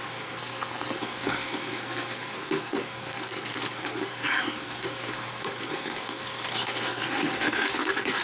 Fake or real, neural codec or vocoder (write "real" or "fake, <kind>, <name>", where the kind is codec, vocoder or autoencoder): fake, codec, SNAC